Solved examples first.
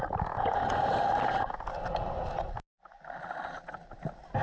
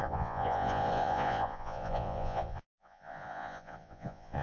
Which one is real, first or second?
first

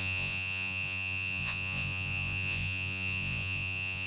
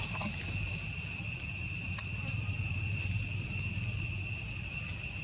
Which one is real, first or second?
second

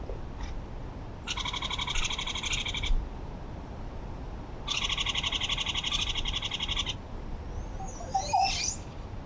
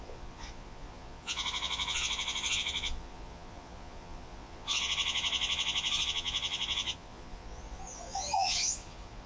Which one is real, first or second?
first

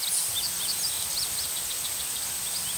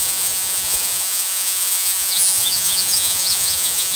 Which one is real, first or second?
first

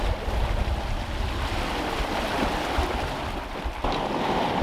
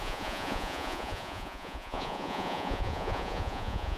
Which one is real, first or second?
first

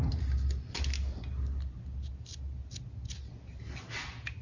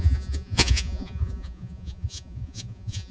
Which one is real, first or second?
first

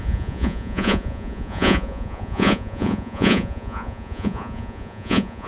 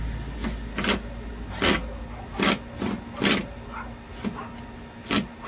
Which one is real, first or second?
second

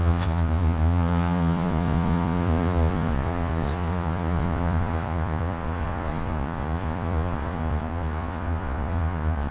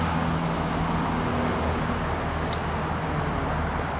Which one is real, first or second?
second